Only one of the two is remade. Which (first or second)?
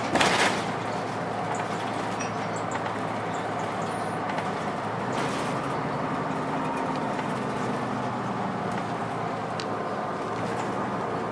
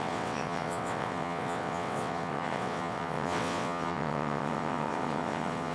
second